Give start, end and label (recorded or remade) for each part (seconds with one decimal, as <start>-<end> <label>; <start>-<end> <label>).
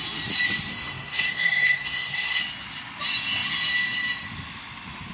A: 0.0-0.7 recorded; 0.7-2.4 remade; 2.4-5.1 recorded